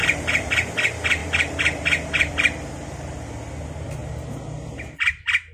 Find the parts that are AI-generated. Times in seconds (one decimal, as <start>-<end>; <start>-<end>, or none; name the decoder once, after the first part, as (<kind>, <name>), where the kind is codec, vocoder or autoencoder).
0.0-0.5 (vocoder, BigVGAN v2); 1.2-2.3; 4.0-4.7